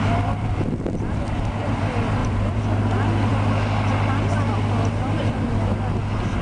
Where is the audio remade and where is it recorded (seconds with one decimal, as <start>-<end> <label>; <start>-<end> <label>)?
0.0-2.2 recorded; 2.2-2.8 remade; 2.8-6.4 recorded